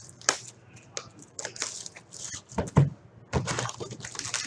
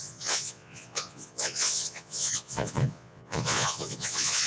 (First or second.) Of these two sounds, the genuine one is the first